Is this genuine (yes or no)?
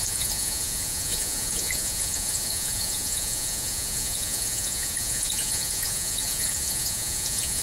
no